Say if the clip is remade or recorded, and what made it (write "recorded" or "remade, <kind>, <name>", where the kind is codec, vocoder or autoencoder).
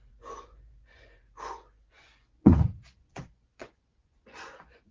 remade, vocoder, Vocos